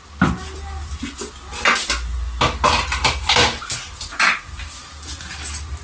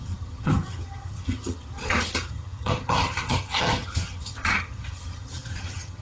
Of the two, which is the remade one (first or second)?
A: second